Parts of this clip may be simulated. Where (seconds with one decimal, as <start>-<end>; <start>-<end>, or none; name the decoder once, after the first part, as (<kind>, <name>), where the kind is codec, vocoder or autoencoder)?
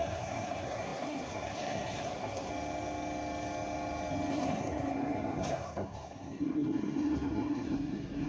0.0-2.5 (codec, SNAC); 4.3-8.3